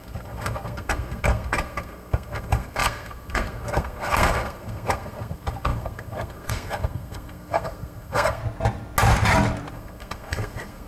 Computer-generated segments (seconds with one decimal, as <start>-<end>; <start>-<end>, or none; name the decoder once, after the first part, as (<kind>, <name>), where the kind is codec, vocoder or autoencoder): 0.0-8.4 (codec, SNAC); 9.7-10.9